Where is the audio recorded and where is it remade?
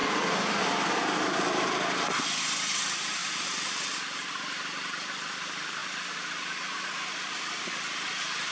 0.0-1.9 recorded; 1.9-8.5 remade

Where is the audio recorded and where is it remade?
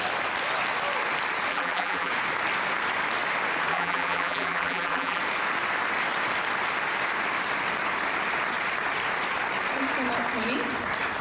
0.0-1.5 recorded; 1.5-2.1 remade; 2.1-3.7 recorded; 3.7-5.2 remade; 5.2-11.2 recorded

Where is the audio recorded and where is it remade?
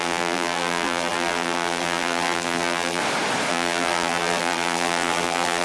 0.0-3.0 remade; 3.0-3.5 recorded; 3.5-5.6 remade